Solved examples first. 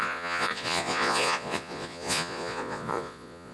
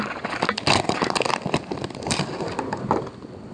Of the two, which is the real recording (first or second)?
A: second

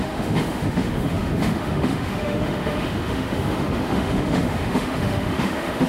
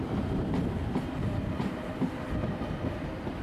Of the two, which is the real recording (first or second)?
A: second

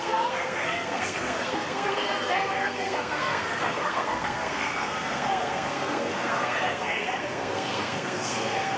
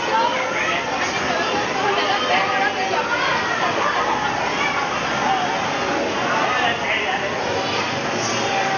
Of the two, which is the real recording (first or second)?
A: second